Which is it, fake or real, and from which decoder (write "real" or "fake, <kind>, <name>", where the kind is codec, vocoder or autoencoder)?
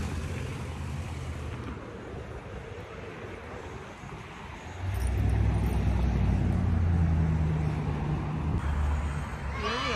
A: real